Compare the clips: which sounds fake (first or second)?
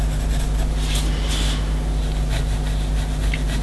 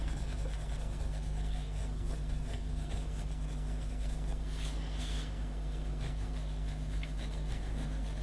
second